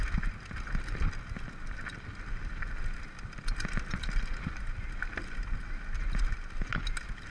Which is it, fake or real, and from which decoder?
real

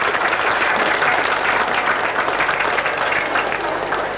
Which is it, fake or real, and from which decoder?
real